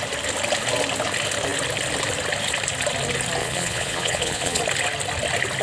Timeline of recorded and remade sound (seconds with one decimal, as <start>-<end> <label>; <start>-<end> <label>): 0.0-3.4 recorded; 3.4-4.6 remade; 4.6-5.6 recorded